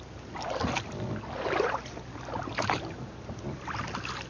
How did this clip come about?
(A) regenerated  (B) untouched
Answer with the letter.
B